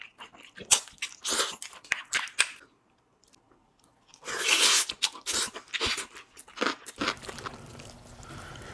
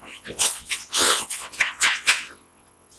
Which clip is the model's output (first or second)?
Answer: second